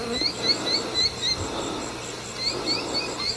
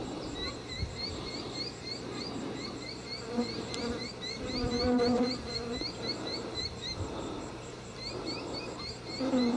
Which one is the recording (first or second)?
first